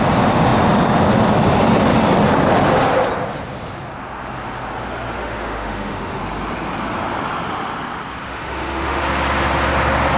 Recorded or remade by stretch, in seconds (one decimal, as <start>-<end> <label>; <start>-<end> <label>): 0.0-5.2 recorded; 5.2-6.2 remade; 6.2-8.3 recorded; 8.3-9.0 remade; 9.0-10.2 recorded